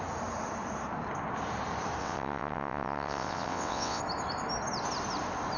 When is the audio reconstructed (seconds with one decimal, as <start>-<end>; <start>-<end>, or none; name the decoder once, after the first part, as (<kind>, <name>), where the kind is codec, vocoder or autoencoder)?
2.0-4.0 (vocoder, WaveNeXt)